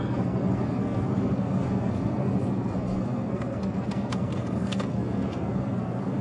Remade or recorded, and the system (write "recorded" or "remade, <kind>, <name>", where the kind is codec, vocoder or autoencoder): remade, codec, SNAC